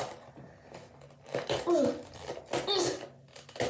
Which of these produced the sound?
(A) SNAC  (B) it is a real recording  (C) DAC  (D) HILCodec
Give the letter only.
B